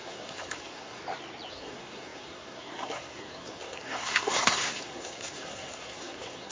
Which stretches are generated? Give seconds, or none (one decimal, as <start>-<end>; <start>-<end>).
0.0-1.0; 1.5-6.5